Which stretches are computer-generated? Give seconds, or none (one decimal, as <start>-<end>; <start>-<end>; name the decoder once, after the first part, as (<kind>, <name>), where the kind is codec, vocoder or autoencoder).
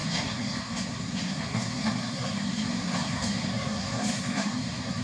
0.0-5.0 (codec, SNAC)